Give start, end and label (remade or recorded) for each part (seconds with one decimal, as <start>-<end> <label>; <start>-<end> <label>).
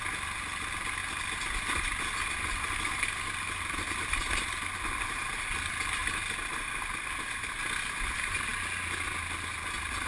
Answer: 0.0-10.1 recorded